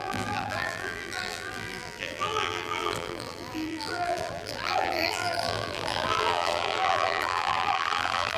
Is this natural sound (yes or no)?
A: no